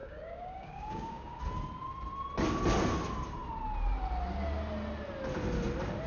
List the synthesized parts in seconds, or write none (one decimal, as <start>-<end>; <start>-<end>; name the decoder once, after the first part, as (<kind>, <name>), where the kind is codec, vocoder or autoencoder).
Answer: 0.0-1.4 (codec, DAC)